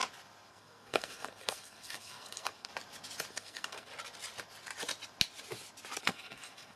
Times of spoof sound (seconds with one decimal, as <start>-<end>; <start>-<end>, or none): 0.5-2.7; 3.3-3.9; 6.0-6.8